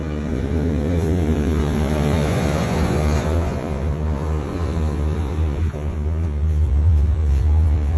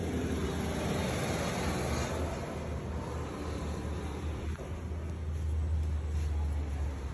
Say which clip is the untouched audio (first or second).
second